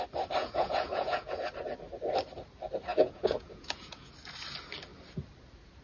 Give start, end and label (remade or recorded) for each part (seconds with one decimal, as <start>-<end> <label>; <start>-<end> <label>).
0.0-0.4 recorded; 0.4-1.5 remade; 1.5-2.9 recorded; 2.9-4.1 remade; 4.1-5.8 recorded